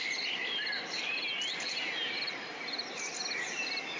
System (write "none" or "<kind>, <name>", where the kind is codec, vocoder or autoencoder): none